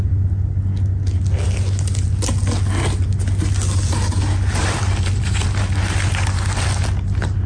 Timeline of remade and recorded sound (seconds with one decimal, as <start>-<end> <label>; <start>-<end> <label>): 0.0-4.6 recorded; 4.6-5.6 remade; 5.6-7.5 recorded